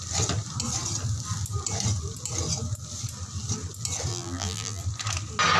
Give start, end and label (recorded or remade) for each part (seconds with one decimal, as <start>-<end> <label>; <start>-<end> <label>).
0.0-4.1 recorded; 4.1-4.8 remade; 4.8-5.6 recorded